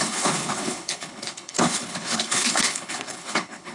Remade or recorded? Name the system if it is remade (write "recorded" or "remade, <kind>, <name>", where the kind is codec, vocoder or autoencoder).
remade, codec, HILCodec